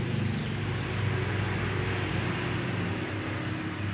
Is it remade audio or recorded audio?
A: recorded